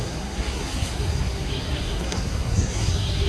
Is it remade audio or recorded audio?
remade